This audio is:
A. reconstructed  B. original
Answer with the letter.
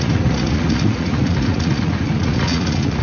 A